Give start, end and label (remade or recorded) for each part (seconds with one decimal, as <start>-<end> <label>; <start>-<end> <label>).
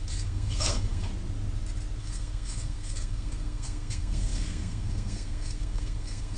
0.0-1.1 remade; 1.1-2.0 recorded; 2.0-6.4 remade